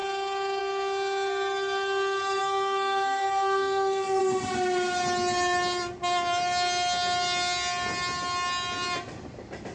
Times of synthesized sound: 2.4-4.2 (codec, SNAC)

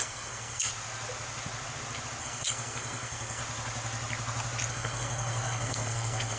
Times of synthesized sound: 0.0-0.7 (codec, SNAC); 2.2-3.4; 4.7-6.4

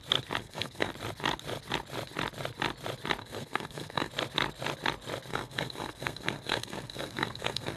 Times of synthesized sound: 0.4-0.9 (codec, SNAC); 3.2-4.1; 5.3-7.8

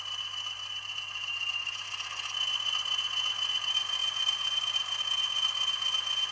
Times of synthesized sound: none

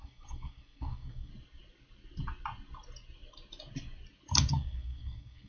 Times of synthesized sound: 0.0-1.3 (codec, SNAC); 4.5-5.5